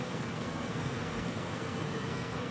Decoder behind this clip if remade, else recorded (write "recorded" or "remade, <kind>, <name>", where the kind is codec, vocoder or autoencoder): remade, codec, SNAC